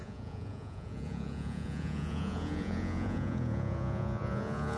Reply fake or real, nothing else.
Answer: fake